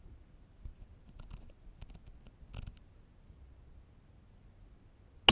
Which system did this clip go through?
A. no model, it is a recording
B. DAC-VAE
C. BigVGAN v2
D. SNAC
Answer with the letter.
A